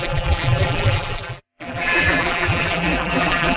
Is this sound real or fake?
fake